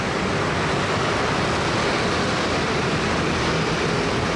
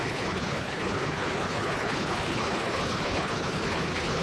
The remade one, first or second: second